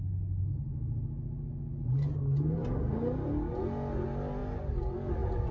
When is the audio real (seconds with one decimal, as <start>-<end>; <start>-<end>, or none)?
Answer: 0.0-5.5